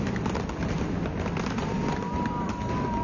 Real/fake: real